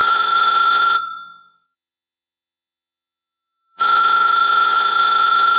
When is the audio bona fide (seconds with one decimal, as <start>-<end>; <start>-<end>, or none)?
none